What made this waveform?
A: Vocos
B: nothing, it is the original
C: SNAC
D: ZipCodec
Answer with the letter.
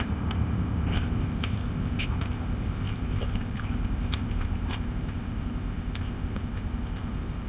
D